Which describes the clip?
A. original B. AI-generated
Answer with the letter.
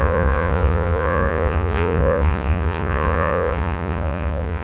B